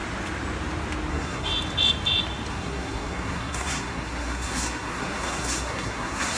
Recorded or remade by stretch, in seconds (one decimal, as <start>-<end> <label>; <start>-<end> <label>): 0.0-1.1 recorded; 1.1-1.5 remade; 1.5-2.5 recorded; 2.5-6.4 remade